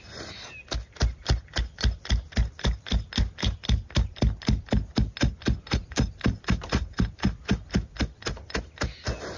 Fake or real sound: real